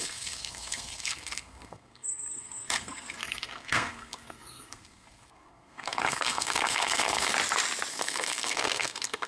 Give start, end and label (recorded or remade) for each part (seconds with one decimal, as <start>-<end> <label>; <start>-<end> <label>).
0.0-7.3 remade; 7.3-7.9 recorded; 7.9-9.3 remade